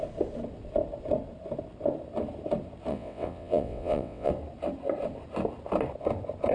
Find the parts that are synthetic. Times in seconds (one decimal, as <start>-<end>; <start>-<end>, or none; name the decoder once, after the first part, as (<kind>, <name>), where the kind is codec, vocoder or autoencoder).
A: 2.9-4.3 (vocoder, WaveNeXt)